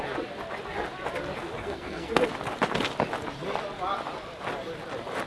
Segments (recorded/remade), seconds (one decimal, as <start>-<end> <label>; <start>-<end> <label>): 0.0-1.6 recorded; 1.6-2.3 remade; 2.3-5.3 recorded